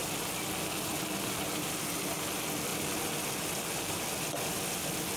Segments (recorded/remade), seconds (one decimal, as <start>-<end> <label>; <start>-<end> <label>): 0.0-5.2 recorded